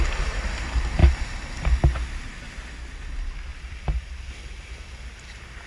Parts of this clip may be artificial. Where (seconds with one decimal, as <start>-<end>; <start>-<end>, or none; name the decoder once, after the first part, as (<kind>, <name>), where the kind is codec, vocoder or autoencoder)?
3.5-5.0 (vocoder, BigVGAN v2)